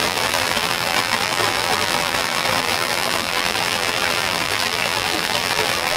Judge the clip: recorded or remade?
remade